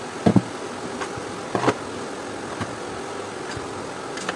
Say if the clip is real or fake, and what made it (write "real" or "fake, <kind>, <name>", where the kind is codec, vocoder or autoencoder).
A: real